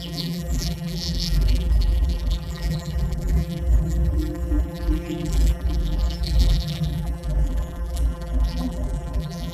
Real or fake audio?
fake